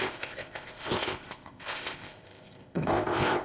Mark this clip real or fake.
fake